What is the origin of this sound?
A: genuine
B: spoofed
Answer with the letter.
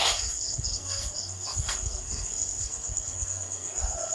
B